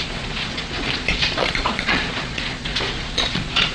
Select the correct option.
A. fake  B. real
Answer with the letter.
A